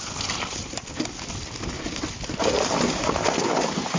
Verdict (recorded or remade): recorded